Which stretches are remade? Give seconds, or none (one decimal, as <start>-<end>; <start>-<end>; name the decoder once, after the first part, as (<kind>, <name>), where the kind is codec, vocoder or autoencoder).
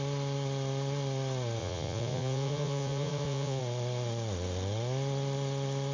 1.6-3.6 (vocoder, Vocos)